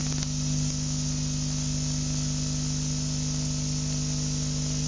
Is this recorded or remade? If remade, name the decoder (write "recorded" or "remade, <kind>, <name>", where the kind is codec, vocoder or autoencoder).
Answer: recorded